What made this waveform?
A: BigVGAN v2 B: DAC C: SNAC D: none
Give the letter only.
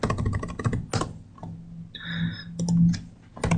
D